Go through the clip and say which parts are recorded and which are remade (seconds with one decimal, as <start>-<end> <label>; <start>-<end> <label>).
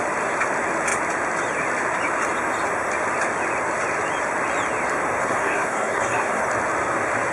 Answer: 0.0-5.2 recorded; 5.2-6.4 remade; 6.4-7.3 recorded